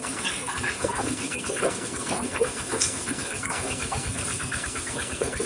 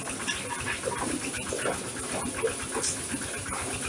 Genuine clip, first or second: second